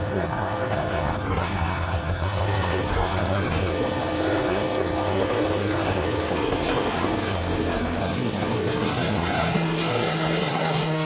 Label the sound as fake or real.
fake